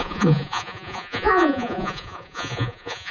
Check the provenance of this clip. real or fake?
fake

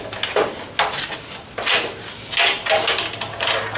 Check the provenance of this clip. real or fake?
real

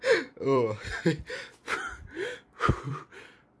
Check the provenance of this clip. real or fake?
fake